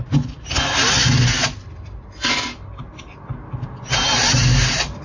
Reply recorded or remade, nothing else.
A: recorded